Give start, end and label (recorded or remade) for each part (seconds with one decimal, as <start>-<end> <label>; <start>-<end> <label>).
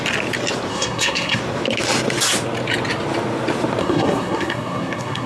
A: 0.0-0.7 recorded; 0.7-1.4 remade; 1.4-3.8 recorded; 3.8-5.3 remade